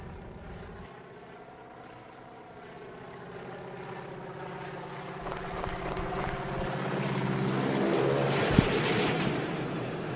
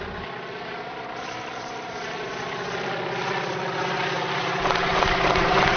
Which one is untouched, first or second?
first